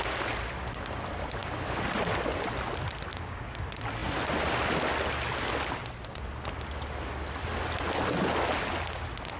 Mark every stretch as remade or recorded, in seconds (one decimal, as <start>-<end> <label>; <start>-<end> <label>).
0.0-3.1 recorded; 3.1-3.6 remade; 3.6-9.4 recorded